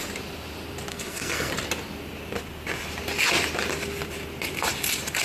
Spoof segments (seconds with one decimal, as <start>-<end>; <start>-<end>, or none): 0.9-1.5